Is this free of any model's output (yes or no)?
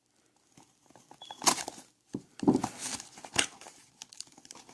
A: yes